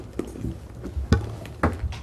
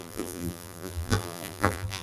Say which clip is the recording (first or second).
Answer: first